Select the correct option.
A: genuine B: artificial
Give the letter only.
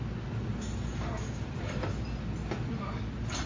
A